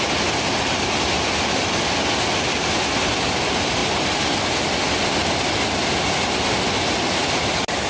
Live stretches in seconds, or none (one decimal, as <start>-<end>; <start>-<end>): 0.0-7.9